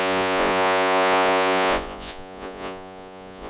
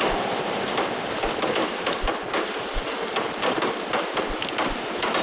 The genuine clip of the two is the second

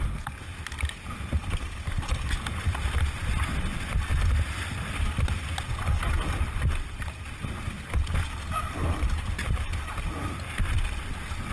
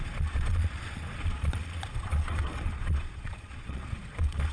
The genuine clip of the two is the first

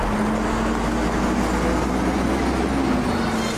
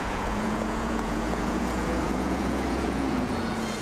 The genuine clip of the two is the first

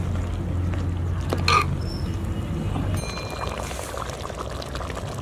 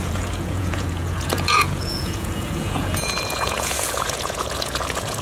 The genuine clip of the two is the first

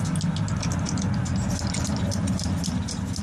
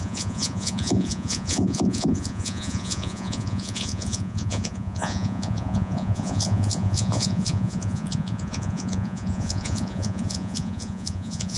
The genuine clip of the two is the first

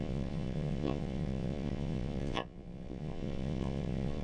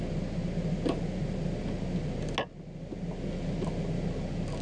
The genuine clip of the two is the second